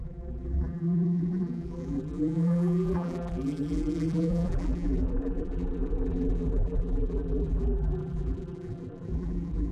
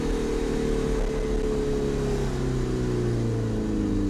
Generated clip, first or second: first